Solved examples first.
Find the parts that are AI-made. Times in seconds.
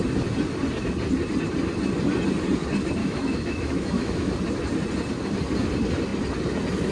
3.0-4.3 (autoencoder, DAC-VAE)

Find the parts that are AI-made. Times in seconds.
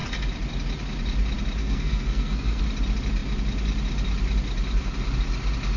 1.6-2.6 (codec, SNAC)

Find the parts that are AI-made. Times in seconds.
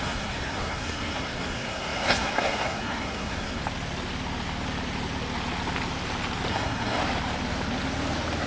0.0-3.6 (codec, SNAC); 6.5-7.0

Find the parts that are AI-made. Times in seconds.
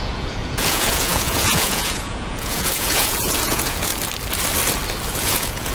0.0-3.9 (vocoder, Vocos); 5.2-5.7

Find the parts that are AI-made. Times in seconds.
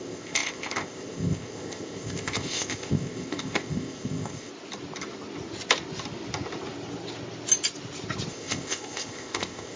0.0-4.5 (codec, ZipCodec); 8.3-9.8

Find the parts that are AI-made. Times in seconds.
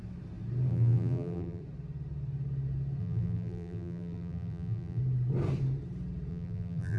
0.7-1.6 (vocoder, BigVGAN v2); 3.0-5.0; 6.3-7.0